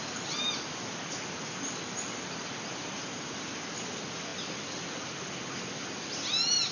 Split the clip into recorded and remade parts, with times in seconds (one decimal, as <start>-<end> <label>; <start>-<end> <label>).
0.0-6.7 recorded